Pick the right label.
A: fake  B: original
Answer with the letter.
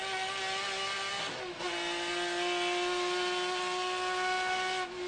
B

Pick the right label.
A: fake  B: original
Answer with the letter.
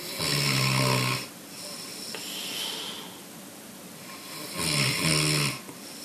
B